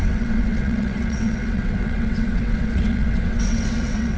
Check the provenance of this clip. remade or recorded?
remade